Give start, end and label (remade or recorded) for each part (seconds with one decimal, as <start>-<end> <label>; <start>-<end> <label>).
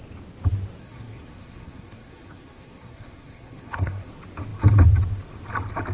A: 0.0-0.8 recorded; 0.8-4.1 remade; 4.1-5.9 recorded